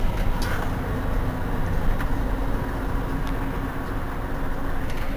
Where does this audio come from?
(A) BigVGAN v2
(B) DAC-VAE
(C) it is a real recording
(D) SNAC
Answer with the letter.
C